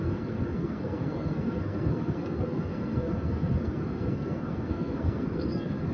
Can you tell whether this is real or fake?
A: fake